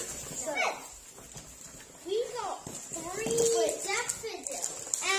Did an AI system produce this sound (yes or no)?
no